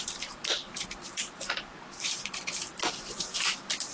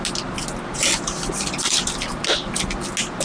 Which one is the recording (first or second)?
second